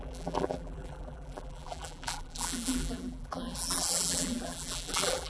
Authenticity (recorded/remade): remade